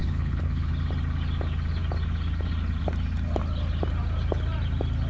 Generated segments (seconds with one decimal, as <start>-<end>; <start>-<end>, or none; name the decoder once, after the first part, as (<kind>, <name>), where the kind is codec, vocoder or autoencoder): 0.0-0.7 (codec, HILCodec)